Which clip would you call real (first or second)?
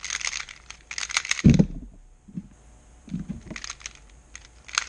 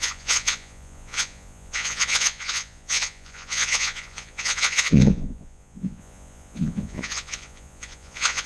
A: first